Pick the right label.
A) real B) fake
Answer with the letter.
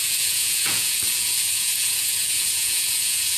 B